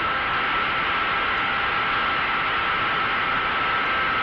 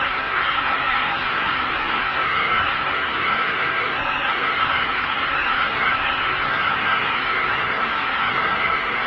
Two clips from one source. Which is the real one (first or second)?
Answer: first